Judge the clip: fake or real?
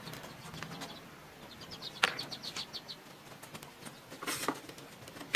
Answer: real